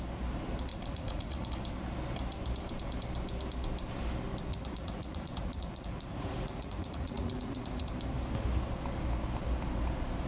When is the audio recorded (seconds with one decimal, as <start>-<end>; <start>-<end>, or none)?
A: 0.0-0.7; 1.5-4.5; 7.9-10.3